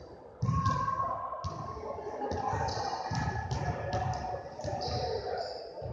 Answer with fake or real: real